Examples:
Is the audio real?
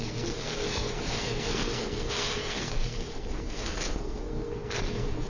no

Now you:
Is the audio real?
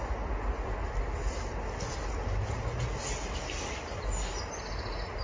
yes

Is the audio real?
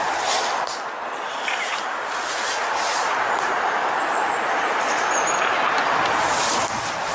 yes